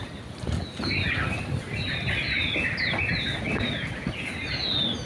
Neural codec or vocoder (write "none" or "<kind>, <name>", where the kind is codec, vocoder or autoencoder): none